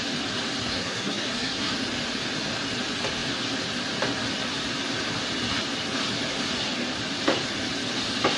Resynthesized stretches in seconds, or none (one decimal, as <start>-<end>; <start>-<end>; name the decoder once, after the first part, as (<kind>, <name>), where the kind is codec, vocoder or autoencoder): 0.7-1.7 (codec, SNAC)